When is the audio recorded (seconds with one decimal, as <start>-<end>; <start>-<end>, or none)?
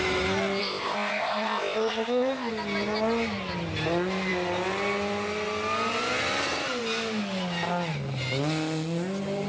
0.0-0.6; 2.5-9.5